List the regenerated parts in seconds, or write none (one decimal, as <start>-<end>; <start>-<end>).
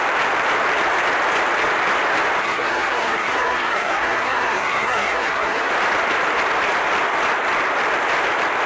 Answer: 2.4-5.7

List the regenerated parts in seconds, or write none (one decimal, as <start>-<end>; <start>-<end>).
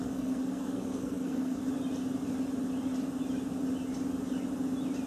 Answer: 0.0-1.6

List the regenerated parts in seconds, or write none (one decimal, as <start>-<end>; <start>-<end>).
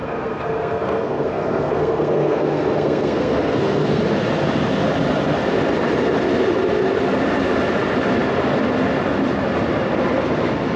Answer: 0.0-4.0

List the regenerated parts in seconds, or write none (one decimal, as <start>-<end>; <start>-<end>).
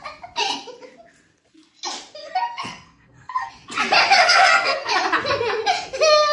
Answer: 2.2-3.5; 4.1-4.9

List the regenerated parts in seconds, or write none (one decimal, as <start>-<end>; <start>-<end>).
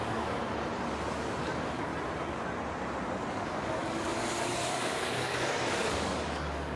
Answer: 0.0-0.4; 1.4-1.9; 3.3-6.8